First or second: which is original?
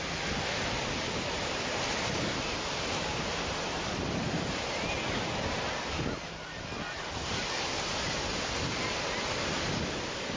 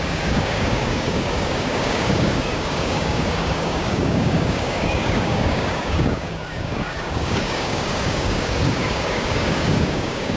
first